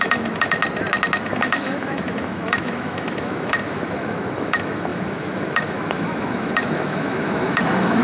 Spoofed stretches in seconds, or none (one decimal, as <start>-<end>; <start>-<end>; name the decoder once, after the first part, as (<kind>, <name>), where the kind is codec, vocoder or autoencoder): 0.0-0.6 (autoencoder, DAC-VAE); 1.2-8.0